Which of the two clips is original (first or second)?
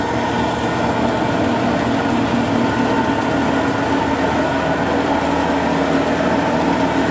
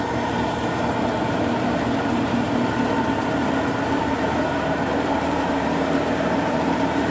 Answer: first